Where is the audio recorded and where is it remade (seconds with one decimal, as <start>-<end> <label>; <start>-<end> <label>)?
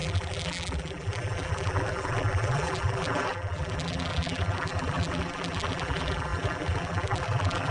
0.0-7.7 remade